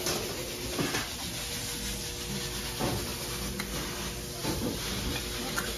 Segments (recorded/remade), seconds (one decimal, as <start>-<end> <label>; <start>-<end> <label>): 0.0-4.4 recorded; 4.4-5.2 remade; 5.2-5.8 recorded